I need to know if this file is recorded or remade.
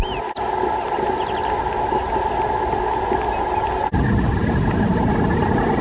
recorded